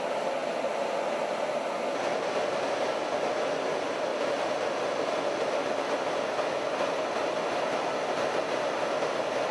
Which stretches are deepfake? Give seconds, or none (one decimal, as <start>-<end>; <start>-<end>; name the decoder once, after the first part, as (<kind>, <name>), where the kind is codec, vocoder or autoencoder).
none